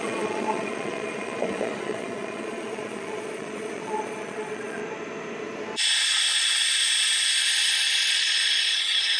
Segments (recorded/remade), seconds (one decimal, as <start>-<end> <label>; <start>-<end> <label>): 0.0-4.8 remade; 4.8-8.1 recorded; 8.1-9.2 remade